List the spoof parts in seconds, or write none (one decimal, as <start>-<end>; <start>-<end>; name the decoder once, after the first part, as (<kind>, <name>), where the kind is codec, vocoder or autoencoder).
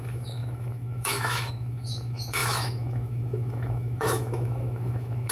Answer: 0.0-5.3 (autoencoder, DAC-VAE)